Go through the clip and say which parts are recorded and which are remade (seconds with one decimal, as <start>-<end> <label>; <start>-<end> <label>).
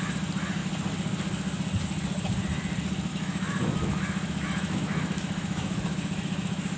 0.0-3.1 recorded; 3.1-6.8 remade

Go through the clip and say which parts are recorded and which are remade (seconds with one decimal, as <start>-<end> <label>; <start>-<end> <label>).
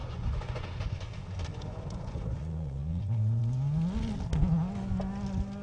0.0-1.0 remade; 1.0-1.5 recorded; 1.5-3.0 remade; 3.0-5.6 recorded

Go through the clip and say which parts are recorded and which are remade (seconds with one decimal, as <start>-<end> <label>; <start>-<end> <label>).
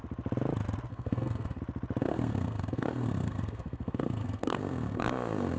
0.0-0.9 recorded; 0.9-1.6 remade; 1.6-2.0 recorded; 2.0-5.6 remade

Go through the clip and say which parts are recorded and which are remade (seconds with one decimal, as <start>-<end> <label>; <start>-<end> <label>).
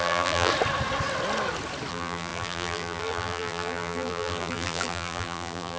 0.0-0.5 remade; 0.5-1.9 recorded; 1.9-5.8 remade